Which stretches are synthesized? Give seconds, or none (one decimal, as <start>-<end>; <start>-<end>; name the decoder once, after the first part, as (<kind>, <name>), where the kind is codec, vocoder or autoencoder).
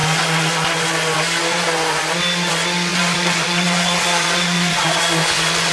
2.9-5.7 (vocoder, Vocos)